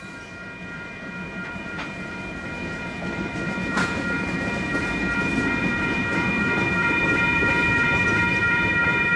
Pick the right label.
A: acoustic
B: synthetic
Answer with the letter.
B